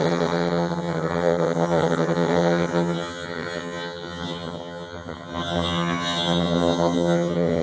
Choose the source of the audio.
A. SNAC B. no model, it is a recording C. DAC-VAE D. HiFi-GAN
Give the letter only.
D